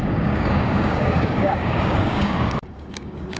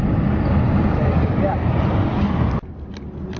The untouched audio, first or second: second